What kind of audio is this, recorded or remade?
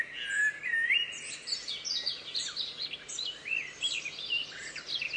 recorded